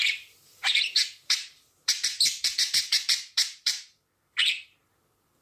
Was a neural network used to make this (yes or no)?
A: yes